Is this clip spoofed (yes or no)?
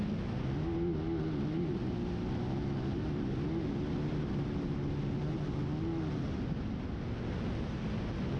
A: no